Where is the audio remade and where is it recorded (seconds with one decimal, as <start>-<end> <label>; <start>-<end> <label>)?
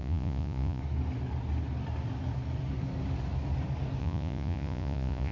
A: 0.0-0.8 remade; 0.8-4.0 recorded; 4.0-5.3 remade